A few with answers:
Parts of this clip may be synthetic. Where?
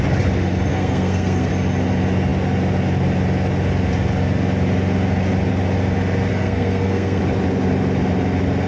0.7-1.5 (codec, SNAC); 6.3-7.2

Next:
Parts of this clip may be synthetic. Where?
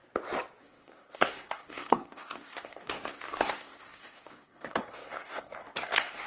0.6-6.3 (codec, SNAC)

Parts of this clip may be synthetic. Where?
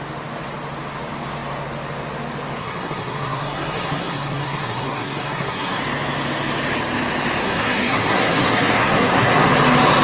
2.6-5.8 (codec, SNAC); 7.4-9.5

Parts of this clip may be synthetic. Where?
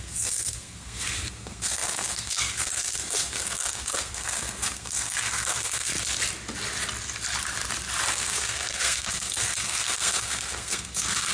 0.0-5.9 (codec, SNAC); 8.1-11.3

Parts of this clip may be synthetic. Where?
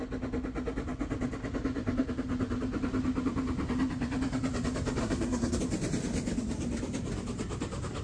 5.0-5.6 (codec, SNAC)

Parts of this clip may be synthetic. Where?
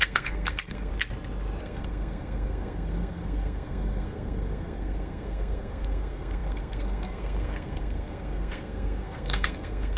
0.0-0.9 (codec, SNAC); 1.6-10.0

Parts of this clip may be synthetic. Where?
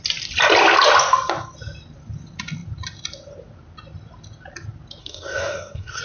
5.0-6.0 (codec, SNAC)